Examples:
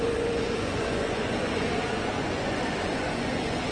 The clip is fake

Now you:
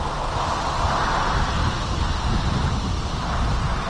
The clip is real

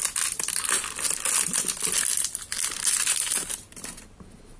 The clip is real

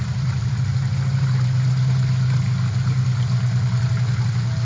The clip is real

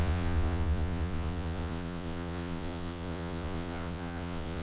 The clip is fake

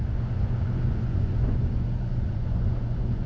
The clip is fake